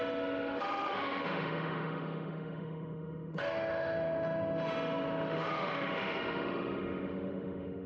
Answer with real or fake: fake